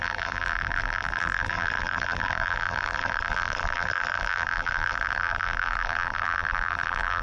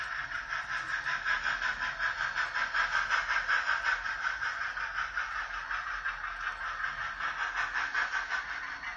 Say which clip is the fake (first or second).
first